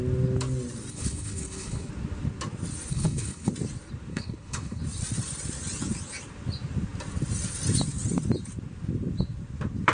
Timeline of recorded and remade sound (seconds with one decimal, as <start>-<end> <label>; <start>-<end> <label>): 0.0-0.9 recorded; 0.9-1.9 remade; 1.9-2.9 recorded; 2.9-3.5 remade; 3.5-4.1 recorded; 4.1-4.8 remade; 4.8-9.9 recorded